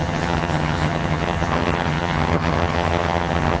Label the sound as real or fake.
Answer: fake